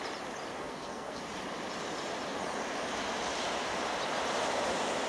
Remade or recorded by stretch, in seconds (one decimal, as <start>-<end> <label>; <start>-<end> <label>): 0.0-0.5 recorded; 0.5-1.2 remade; 1.2-5.1 recorded

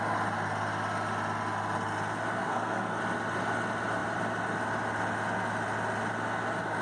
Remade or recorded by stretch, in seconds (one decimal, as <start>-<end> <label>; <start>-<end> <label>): 0.0-2.4 recorded; 2.4-3.0 remade; 3.0-6.8 recorded